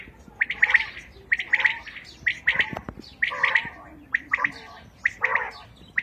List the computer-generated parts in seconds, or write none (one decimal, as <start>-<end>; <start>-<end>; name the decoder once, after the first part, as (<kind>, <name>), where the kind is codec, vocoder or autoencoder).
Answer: none